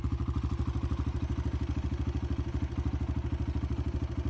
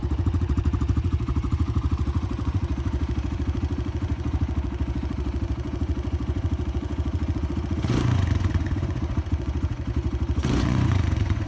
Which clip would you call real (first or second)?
first